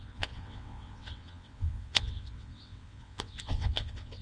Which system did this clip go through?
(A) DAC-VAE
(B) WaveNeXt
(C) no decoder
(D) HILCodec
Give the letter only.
B